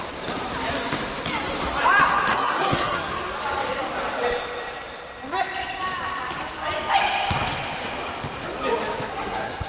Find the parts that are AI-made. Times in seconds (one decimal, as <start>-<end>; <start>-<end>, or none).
2.3-3.1; 9.1-9.7

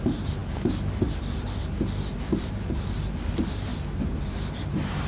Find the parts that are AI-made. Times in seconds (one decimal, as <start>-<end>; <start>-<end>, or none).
none

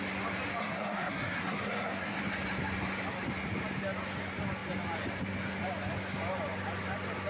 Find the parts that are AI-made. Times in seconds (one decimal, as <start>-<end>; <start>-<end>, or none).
0.6-2.2